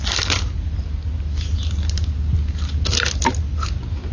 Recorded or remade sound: recorded